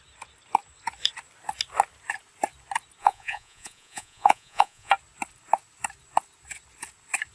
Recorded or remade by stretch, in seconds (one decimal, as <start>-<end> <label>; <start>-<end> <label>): 0.0-3.0 recorded; 3.0-4.9 remade; 4.9-7.3 recorded